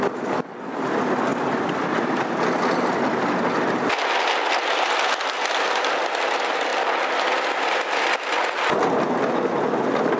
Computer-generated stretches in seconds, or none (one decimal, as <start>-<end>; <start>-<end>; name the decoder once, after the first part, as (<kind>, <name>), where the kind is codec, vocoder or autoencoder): none